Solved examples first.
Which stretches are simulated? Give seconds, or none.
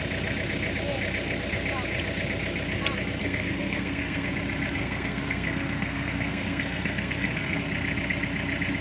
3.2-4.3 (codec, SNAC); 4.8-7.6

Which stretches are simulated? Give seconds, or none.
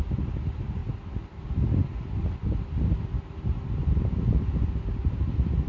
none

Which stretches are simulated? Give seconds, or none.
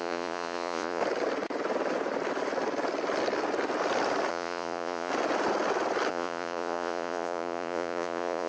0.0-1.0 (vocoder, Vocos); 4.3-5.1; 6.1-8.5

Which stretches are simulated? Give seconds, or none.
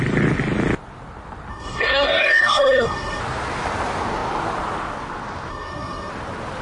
1.5-3.2 (codec, SNAC); 5.5-6.1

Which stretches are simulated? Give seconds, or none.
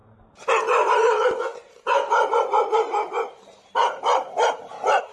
0.9-5.1 (vocoder, BigVGAN v2)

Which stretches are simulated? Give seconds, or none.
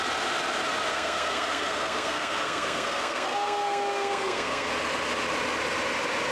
0.9-4.7 (codec, SNAC)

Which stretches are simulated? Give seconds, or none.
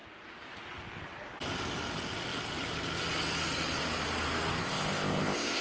4.6-5.6 (codec, ZipCodec)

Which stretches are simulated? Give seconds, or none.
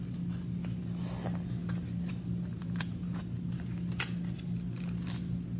2.5-3.2 (vocoder, Vocos)